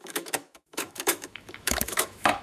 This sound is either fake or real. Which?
fake